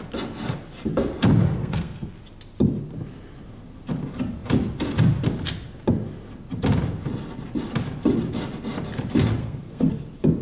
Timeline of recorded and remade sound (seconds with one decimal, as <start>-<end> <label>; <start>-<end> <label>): 0.0-1.6 recorded; 1.6-2.2 remade; 2.2-9.4 recorded; 9.4-9.9 remade; 9.9-10.4 recorded